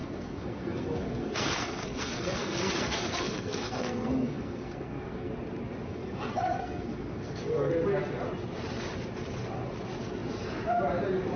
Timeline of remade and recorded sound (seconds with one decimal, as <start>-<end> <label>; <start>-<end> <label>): 0.0-5.3 remade; 5.3-5.9 recorded; 5.9-7.7 remade; 7.7-11.4 recorded

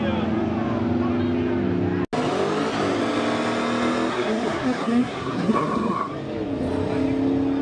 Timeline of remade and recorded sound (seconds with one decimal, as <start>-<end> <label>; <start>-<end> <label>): 0.0-4.1 recorded; 4.1-6.1 remade; 6.1-7.6 recorded

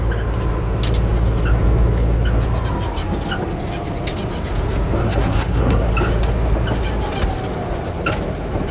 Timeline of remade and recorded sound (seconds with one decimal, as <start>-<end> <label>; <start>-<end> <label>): 0.0-5.0 recorded; 5.0-5.9 remade; 5.9-8.7 recorded